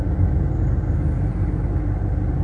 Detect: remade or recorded recorded